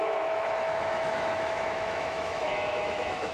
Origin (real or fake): fake